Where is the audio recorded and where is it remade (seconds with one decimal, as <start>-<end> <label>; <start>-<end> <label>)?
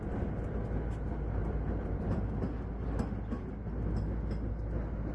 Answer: 0.0-1.4 recorded; 1.4-2.2 remade; 2.2-5.1 recorded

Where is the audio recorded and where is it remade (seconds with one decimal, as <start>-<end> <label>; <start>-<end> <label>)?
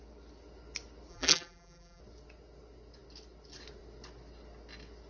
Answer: 0.0-1.1 recorded; 1.1-2.0 remade; 2.0-5.1 recorded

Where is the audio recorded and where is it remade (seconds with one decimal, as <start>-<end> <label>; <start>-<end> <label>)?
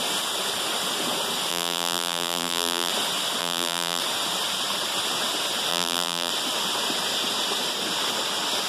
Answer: 0.0-1.5 recorded; 1.5-2.9 remade; 2.9-3.4 recorded; 3.4-4.0 remade; 4.0-5.7 recorded; 5.7-6.3 remade; 6.3-8.7 recorded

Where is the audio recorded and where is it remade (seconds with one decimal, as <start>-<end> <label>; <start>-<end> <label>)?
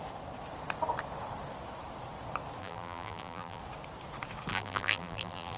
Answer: 0.0-2.6 recorded; 2.6-3.6 remade; 3.6-4.5 recorded; 4.5-5.6 remade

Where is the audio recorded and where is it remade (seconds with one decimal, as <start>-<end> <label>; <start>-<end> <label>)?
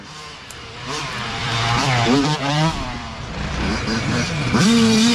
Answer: 0.0-5.1 remade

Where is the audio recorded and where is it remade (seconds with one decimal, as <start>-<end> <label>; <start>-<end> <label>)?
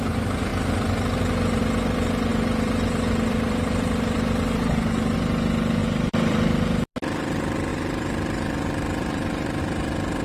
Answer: 0.0-2.3 recorded; 2.3-4.6 remade; 4.6-5.8 recorded; 5.8-6.9 remade; 6.9-7.7 recorded; 7.7-9.6 remade; 9.6-10.2 recorded